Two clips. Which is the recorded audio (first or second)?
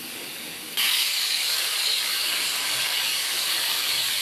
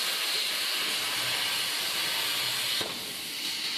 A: second